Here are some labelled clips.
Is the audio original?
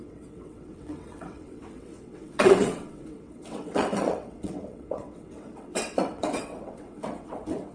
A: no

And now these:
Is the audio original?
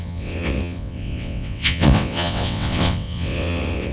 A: no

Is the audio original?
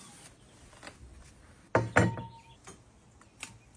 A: yes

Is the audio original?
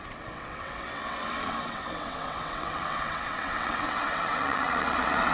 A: no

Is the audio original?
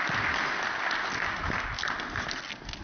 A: yes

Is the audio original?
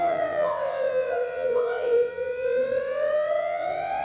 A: no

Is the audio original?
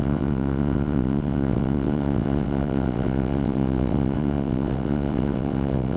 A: no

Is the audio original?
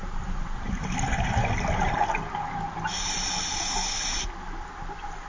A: yes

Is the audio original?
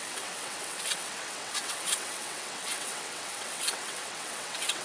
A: no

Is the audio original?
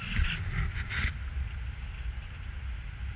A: yes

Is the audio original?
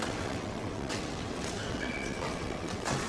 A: no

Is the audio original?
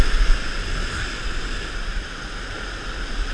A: yes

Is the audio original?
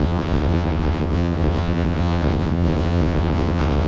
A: no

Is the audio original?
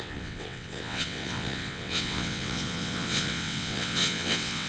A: no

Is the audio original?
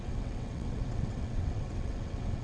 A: no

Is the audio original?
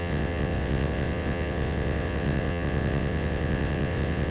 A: no